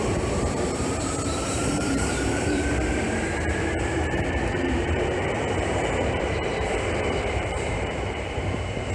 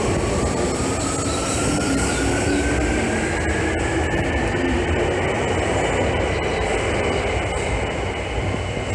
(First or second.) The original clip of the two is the second